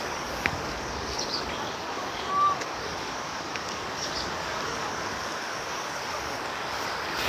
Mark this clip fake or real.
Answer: fake